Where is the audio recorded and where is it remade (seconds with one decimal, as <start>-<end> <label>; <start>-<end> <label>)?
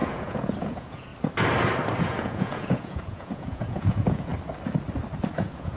0.0-1.1 remade; 1.1-2.0 recorded; 2.0-4.3 remade; 4.3-5.3 recorded; 5.3-5.8 remade